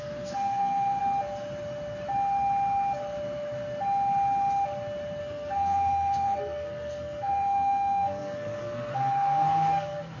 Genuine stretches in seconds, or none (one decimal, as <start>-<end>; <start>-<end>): 1.0-5.2

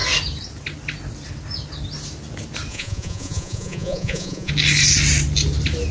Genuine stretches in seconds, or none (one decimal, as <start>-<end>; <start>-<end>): 0.0-2.7; 4.5-5.9

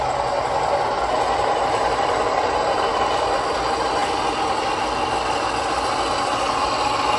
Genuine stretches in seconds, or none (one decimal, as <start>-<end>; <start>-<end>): 0.0-7.2

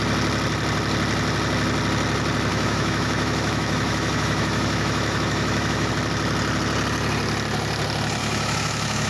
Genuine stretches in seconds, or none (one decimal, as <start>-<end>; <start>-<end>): 0.0-2.5; 5.9-8.2

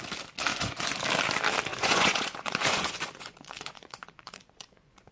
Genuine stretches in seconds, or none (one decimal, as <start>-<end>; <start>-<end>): 0.0-0.5; 1.0-1.7

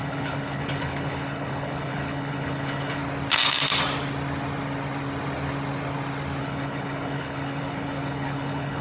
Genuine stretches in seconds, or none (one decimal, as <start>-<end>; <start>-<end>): 3.0-6.4

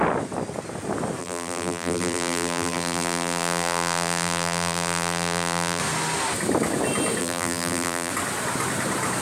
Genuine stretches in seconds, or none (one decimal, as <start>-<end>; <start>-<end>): 0.0-1.2; 5.8-7.2; 8.1-9.2

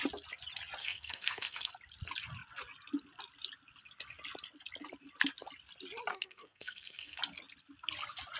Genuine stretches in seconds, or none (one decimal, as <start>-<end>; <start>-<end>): 0.0-0.8; 1.7-6.1; 7.2-8.4